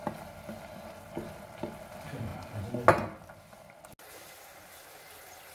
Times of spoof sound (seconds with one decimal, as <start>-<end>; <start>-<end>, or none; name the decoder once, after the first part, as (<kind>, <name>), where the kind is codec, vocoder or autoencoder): none